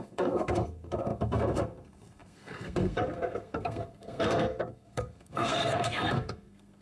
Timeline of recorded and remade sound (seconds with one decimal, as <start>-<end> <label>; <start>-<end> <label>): 0.0-6.8 remade

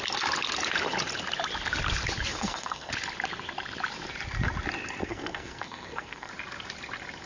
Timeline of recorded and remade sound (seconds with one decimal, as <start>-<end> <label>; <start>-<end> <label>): 0.0-2.3 recorded; 2.3-2.9 remade; 2.9-5.0 recorded; 5.0-6.3 remade; 6.3-7.3 recorded

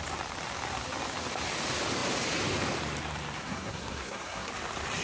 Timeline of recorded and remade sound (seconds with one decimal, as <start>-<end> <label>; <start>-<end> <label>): 0.0-3.4 recorded; 3.4-4.5 remade; 4.5-5.0 recorded

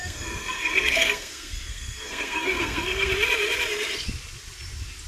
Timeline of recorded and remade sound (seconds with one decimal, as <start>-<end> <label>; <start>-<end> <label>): 0.0-3.1 remade; 3.1-5.1 recorded

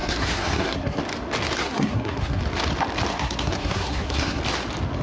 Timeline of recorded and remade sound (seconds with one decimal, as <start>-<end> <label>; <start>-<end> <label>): 0.0-1.0 remade; 1.0-1.6 recorded; 1.6-2.4 remade; 2.4-3.1 recorded; 3.1-4.4 remade; 4.4-5.0 recorded

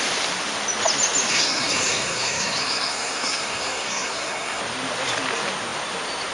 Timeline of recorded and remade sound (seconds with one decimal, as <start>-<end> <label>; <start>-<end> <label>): 0.0-1.3 recorded; 1.3-4.6 remade; 4.6-6.3 recorded